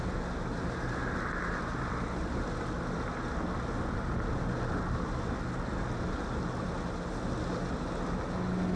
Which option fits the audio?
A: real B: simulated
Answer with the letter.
A